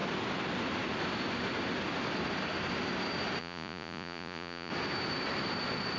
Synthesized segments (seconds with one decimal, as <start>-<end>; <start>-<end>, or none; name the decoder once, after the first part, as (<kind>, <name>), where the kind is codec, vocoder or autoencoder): 3.4-4.7 (vocoder, Vocos)